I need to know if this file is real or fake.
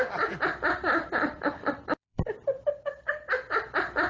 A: fake